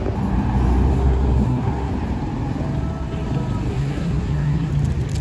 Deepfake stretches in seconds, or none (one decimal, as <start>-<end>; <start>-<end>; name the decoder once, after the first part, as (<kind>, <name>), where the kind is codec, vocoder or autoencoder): 0.9-1.9 (codec, SNAC); 3.7-4.7